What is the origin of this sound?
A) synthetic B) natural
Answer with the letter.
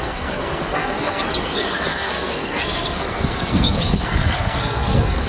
A